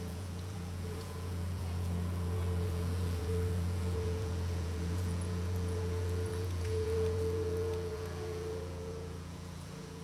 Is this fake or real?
fake